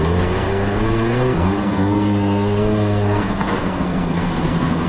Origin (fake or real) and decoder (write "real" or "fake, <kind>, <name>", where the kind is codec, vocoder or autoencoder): fake, codec, SNAC